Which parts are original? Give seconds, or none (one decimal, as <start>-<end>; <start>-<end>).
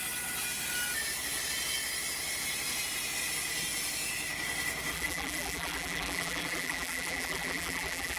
0.0-4.9